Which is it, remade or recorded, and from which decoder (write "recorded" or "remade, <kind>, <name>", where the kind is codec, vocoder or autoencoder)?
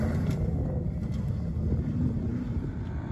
recorded